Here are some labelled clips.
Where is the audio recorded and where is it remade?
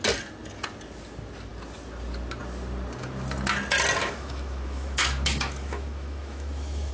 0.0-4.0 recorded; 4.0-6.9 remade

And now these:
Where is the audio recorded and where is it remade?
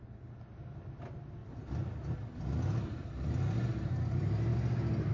0.0-5.1 recorded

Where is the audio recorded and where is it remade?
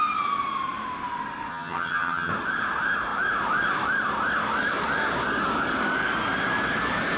0.0-1.5 recorded; 1.5-2.3 remade; 2.3-7.2 recorded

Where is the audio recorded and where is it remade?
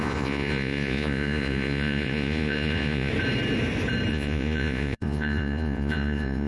0.0-3.1 remade; 3.1-4.1 recorded; 4.1-6.5 remade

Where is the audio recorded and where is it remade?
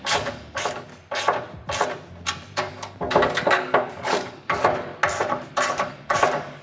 0.0-0.9 remade; 0.9-2.7 recorded; 2.7-4.9 remade; 4.9-5.7 recorded; 5.7-6.6 remade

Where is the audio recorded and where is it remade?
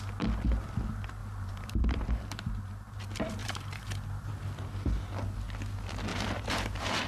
0.0-1.2 recorded; 1.2-3.0 remade; 3.0-3.4 recorded; 3.4-4.3 remade; 4.3-6.1 recorded; 6.1-7.1 remade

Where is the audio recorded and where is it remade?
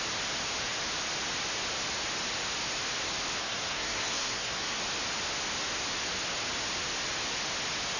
0.0-3.4 recorded; 3.4-4.8 remade; 4.8-8.0 recorded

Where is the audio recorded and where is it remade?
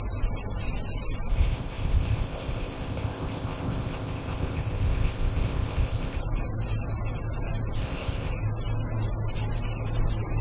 0.0-1.3 recorded; 1.3-6.2 remade; 6.2-7.8 recorded; 7.8-8.3 remade; 8.3-10.4 recorded